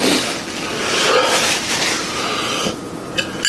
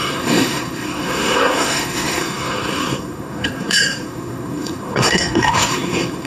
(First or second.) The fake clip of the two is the second